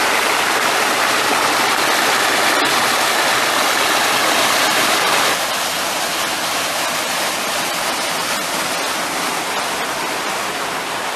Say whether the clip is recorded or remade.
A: recorded